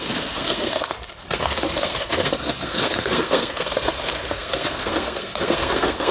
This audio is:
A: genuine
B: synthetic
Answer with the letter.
B